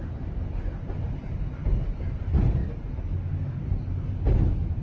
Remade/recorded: recorded